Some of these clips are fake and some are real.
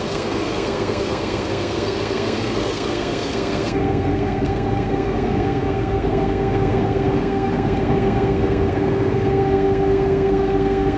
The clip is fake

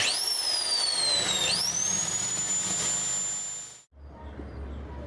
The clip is real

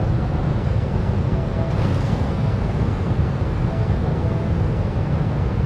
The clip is fake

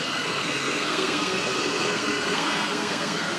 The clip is fake